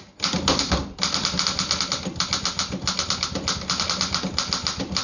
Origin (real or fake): real